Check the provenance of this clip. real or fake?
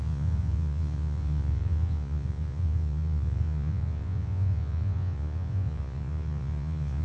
fake